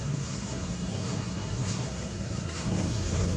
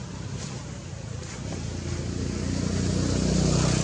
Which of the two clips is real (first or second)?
second